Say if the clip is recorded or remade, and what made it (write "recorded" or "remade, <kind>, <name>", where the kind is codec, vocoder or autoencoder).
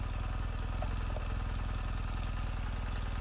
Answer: recorded